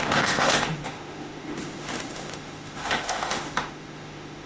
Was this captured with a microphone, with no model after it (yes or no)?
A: no